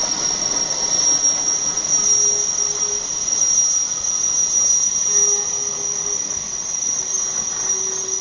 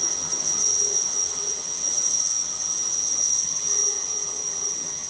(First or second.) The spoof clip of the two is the second